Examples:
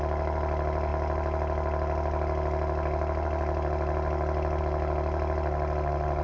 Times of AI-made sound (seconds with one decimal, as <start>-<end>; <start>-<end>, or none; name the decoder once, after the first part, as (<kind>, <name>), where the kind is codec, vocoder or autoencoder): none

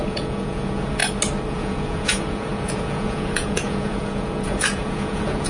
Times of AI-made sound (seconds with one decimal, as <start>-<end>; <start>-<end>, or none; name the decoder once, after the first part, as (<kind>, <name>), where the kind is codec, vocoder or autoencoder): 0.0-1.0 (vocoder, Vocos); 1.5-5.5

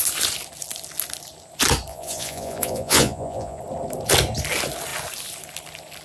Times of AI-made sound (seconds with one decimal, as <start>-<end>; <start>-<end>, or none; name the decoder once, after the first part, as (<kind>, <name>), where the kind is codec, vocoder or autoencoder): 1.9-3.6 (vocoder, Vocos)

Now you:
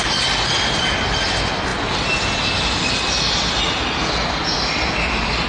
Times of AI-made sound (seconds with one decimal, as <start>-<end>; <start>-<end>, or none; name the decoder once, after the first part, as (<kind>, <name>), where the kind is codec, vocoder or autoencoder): none